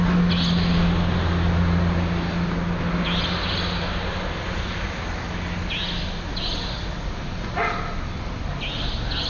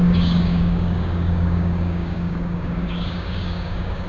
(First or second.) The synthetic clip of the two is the second